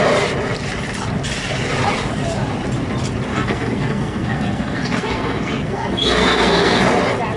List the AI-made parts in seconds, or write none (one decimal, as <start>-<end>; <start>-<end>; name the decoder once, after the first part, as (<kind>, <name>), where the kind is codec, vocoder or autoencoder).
3.3-6.8 (codec, SNAC)